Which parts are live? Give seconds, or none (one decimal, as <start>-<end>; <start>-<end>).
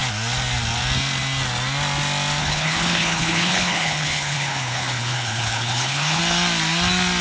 0.0-2.4; 6.2-7.2